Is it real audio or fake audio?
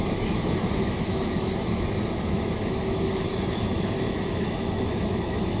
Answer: fake